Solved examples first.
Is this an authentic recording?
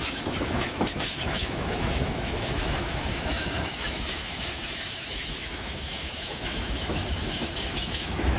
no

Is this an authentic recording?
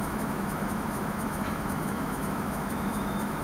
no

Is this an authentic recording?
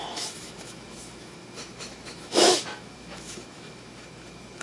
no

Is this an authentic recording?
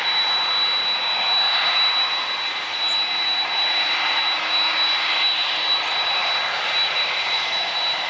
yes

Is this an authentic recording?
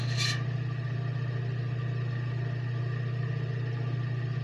yes